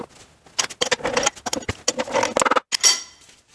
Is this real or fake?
real